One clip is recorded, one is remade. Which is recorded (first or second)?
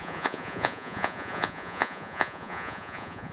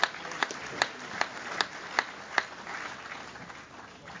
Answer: second